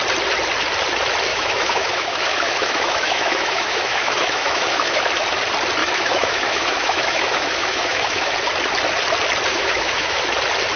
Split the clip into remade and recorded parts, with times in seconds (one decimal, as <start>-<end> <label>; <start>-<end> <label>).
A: 0.0-1.3 recorded; 1.3-5.0 remade; 5.0-5.8 recorded; 5.8-8.3 remade; 8.3-9.5 recorded; 9.5-10.2 remade; 10.2-10.8 recorded